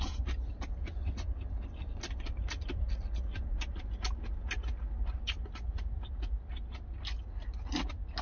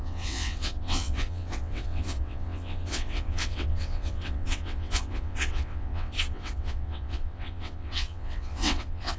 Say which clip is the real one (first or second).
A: first